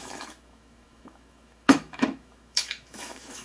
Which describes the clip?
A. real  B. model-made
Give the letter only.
B